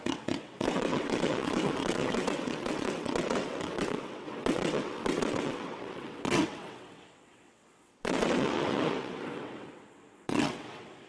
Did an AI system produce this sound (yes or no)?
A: yes